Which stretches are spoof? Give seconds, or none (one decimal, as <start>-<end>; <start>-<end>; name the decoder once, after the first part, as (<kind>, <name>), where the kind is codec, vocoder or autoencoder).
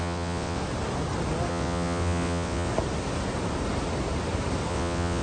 0.0-0.6 (vocoder, WaveNeXt); 1.5-2.7; 4.7-5.2